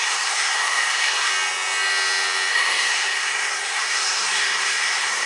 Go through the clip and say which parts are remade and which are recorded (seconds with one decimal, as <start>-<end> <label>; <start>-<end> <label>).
0.0-1.3 remade; 1.3-2.5 recorded; 2.5-5.3 remade